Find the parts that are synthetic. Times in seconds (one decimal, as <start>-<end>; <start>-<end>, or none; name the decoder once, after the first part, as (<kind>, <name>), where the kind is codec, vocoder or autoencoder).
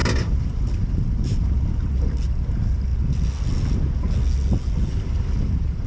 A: none